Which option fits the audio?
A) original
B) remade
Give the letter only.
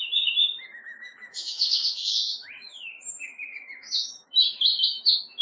B